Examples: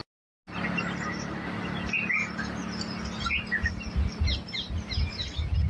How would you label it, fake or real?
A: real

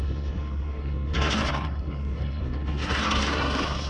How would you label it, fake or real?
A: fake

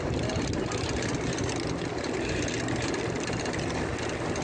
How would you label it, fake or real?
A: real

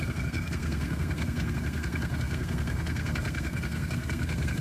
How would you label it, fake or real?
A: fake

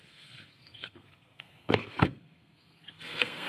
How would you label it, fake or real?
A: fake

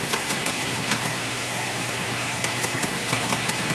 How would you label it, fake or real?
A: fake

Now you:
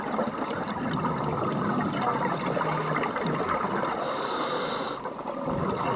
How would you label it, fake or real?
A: real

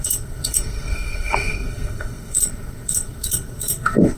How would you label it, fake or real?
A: fake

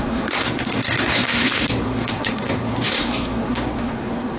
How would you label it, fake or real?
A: fake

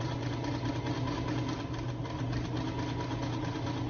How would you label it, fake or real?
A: real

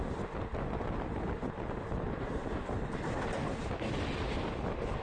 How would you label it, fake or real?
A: real